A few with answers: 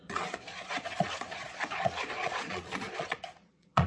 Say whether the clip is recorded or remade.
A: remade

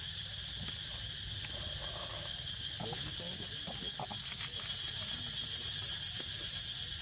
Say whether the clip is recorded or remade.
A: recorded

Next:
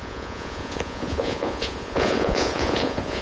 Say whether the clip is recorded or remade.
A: remade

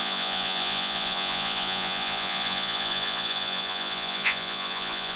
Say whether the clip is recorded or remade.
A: remade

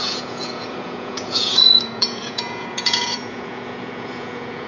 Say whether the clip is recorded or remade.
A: remade